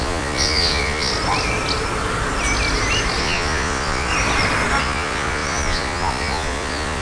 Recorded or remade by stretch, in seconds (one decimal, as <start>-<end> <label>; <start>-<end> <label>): 0.0-1.1 remade; 1.1-3.2 recorded; 3.2-4.1 remade; 4.1-4.8 recorded; 4.8-7.0 remade